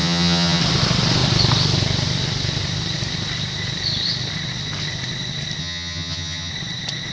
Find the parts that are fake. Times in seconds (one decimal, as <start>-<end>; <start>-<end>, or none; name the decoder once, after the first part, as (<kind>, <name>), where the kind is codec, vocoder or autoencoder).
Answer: 0.0-0.6 (vocoder, HiFi-GAN); 5.6-6.5